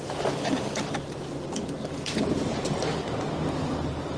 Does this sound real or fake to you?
real